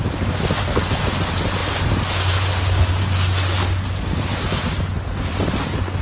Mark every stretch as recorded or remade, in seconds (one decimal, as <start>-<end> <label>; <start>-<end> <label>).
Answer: 0.0-6.0 recorded